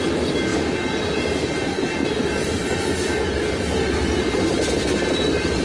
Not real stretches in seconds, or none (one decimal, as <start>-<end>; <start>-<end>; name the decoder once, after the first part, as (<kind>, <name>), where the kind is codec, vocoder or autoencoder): none